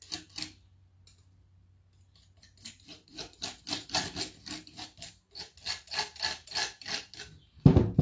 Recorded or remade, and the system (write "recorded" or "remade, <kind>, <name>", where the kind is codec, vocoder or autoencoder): recorded